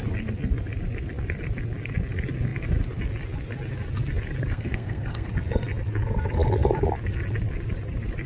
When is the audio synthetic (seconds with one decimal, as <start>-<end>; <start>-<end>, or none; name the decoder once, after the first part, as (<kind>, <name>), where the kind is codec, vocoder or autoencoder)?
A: 4.5-5.3 (codec, SNAC)